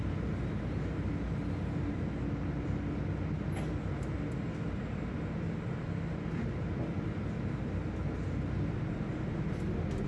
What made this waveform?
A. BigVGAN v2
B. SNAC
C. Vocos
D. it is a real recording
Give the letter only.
D